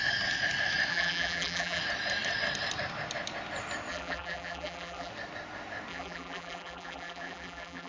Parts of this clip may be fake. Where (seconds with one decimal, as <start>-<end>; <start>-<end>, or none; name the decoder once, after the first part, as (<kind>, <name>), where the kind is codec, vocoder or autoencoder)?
0.9-1.8 (vocoder, BigVGAN v2); 3.9-5.1; 5.9-7.9